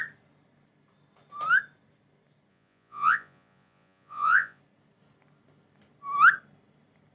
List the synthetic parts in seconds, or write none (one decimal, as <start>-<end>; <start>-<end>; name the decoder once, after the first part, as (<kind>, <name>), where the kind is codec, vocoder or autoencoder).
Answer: 2.5-4.6 (vocoder, Vocos)